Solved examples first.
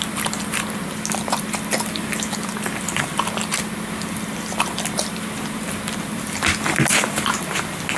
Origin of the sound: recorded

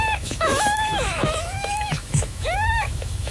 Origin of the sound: remade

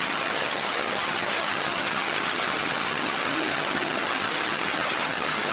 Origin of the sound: remade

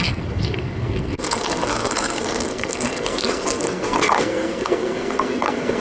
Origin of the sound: remade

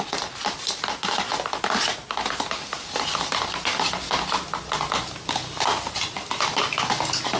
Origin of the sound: recorded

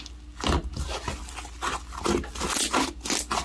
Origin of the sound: recorded